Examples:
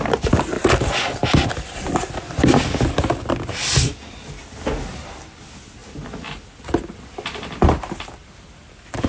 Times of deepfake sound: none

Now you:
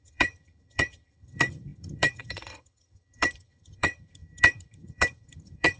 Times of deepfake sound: 0.0-5.8 (vocoder, HiFi-GAN)

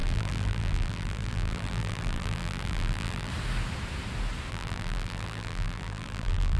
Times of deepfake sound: 0.0-3.3 (vocoder, BigVGAN v2); 4.5-6.6

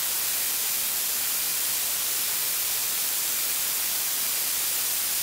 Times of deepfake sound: 2.8-4.2 (vocoder, BigVGAN v2)

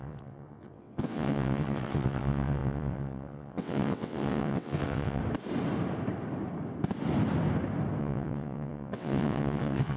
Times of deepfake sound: 0.0-5.2 (vocoder, WaveNeXt); 8.0-10.0